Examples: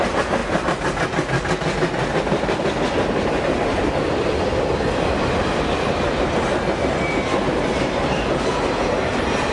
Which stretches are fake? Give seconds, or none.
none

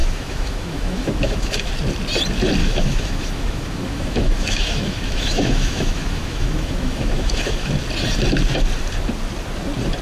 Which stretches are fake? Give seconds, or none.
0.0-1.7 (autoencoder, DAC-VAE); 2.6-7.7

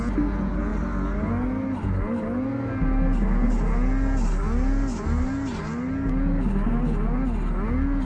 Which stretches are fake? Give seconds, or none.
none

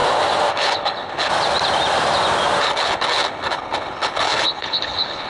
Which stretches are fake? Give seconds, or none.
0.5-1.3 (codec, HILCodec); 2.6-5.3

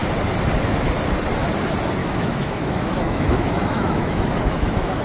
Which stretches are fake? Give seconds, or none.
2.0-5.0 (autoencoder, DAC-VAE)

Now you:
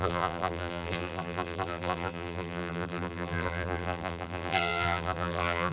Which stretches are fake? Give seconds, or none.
0.0-5.7 (vocoder, BigVGAN v2)